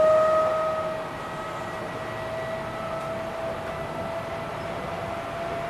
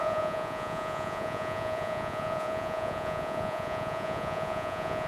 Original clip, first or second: first